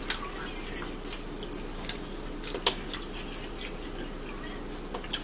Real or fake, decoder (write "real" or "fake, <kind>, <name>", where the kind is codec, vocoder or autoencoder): real